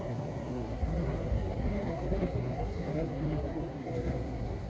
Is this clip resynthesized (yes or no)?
yes